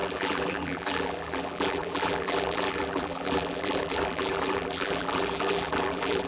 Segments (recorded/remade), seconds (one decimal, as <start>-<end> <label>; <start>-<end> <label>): 0.0-6.3 remade